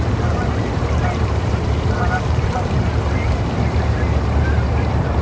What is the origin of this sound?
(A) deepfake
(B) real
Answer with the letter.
A